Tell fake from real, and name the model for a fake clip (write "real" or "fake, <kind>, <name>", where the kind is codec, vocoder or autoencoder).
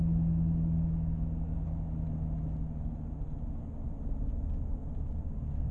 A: real